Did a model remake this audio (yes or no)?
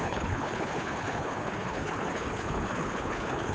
yes